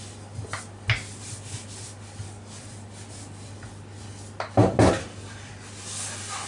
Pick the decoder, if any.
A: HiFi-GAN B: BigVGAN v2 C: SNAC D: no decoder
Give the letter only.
D